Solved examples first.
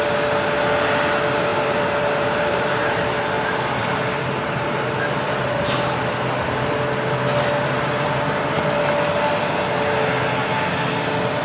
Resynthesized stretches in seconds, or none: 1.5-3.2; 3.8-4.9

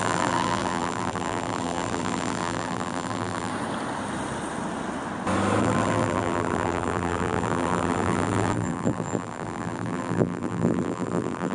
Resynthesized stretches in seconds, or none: 0.0-3.5; 5.6-11.5

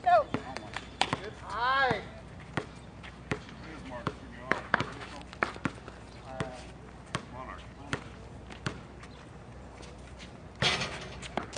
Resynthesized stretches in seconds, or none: 3.7-5.2

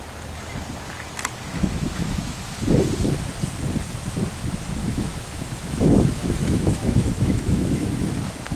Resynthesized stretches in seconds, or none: 1.5-2.4; 4.8-8.1

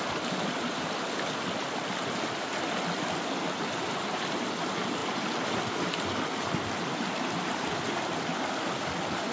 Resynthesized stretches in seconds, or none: none